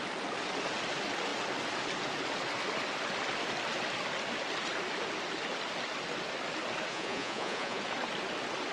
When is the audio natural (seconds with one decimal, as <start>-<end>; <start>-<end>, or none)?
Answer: 0.0-6.9; 7.8-8.7